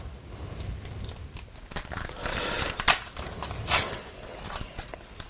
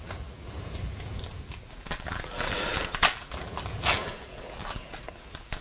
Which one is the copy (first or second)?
second